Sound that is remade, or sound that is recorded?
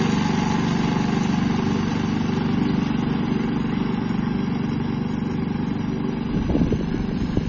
recorded